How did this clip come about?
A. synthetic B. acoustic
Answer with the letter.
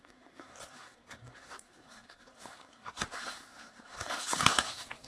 A